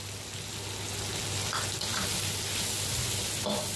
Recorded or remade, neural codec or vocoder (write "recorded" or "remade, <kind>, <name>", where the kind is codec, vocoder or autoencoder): recorded